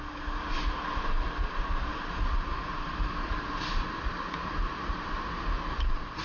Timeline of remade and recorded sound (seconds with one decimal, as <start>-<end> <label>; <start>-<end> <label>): 0.0-1.9 recorded; 1.9-5.3 remade; 5.3-6.2 recorded